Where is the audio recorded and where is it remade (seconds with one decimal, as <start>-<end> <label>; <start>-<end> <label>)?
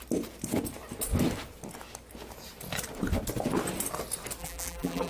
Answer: 0.0-4.4 recorded; 4.4-5.1 remade